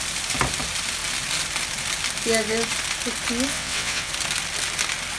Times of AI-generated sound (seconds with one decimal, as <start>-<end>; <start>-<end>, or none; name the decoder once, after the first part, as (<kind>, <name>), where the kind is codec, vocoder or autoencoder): 3.5-4.1 (vocoder, WaveNeXt)